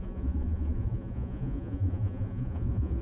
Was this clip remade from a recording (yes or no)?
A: yes